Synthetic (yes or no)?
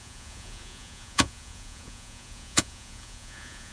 yes